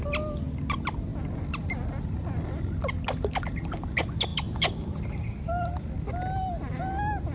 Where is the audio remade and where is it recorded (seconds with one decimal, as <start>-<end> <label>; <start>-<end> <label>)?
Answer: 0.0-7.3 recorded